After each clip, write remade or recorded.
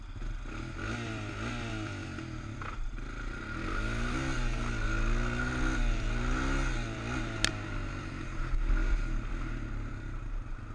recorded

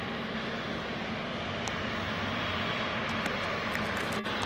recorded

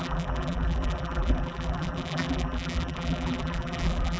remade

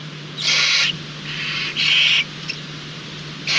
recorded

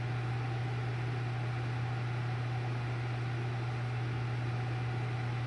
recorded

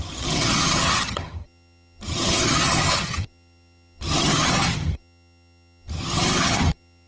remade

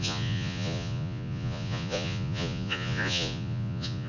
remade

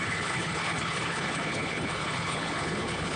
remade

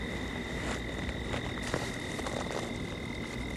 recorded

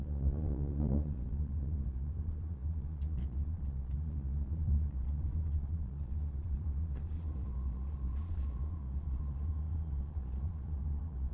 remade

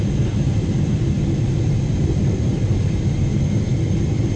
recorded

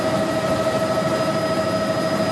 recorded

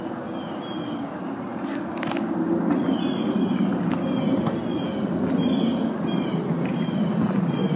recorded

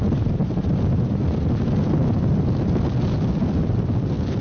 recorded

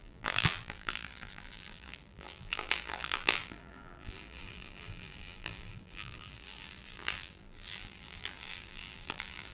remade